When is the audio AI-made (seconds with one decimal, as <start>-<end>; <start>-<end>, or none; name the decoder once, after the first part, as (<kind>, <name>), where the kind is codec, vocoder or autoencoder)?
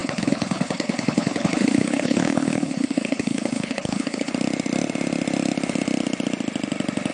0.0-4.3 (codec, HILCodec)